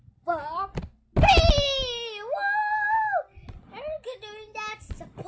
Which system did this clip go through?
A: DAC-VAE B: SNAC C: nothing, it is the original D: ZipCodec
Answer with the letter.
C